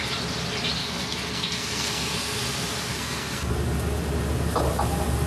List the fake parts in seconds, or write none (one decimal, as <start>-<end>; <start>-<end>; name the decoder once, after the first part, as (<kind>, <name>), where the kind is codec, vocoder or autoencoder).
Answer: 0.8-2.4 (codec, SNAC); 2.9-3.5